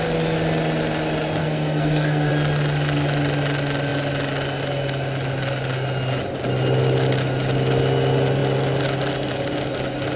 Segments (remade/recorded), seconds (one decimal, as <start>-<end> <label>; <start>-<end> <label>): 0.0-1.4 recorded; 1.4-2.3 remade; 2.3-10.2 recorded